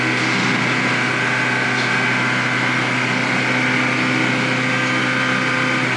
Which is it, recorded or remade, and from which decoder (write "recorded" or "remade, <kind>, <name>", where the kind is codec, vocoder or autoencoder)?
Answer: recorded